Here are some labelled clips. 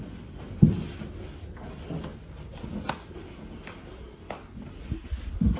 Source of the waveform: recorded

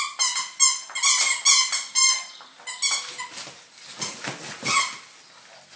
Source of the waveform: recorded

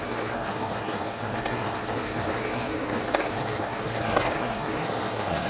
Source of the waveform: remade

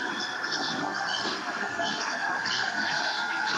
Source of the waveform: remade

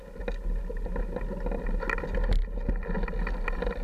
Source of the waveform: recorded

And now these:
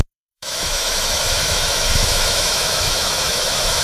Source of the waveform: remade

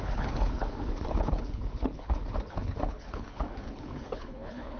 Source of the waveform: remade